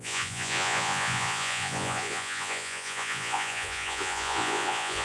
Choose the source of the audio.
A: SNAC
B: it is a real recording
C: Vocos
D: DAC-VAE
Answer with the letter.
C